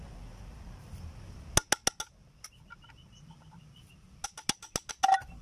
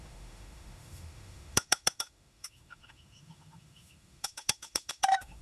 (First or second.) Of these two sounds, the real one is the first